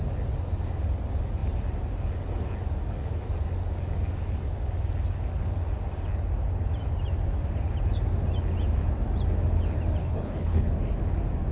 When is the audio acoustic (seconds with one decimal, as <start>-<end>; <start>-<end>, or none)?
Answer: 0.0-10.0; 10.7-11.5